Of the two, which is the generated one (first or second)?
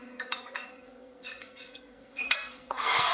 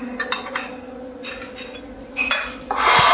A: first